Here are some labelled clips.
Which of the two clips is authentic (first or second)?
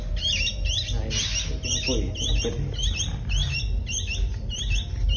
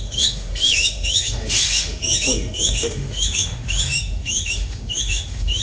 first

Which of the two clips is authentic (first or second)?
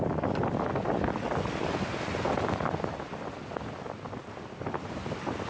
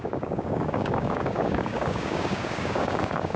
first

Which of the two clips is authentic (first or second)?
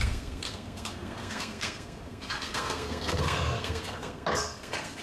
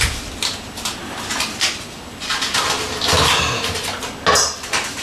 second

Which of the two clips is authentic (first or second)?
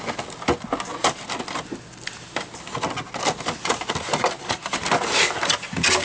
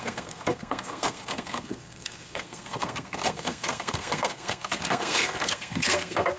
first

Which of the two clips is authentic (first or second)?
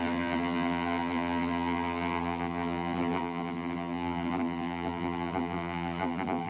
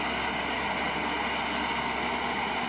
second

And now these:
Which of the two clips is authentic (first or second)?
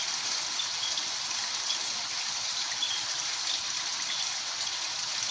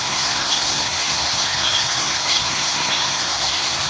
first